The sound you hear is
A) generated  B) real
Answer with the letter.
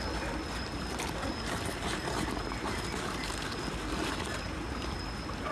B